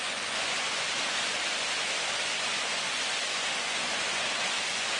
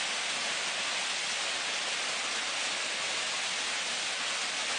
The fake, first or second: first